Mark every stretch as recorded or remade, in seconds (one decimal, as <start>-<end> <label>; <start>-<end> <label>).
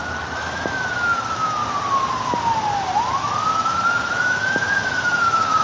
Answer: 0.0-1.6 remade; 1.6-3.0 recorded; 3.0-5.6 remade